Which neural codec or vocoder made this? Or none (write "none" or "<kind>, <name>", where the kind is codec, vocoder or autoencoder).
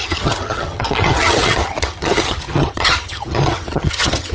vocoder, HiFi-GAN